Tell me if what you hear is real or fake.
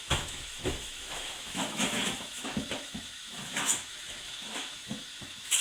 fake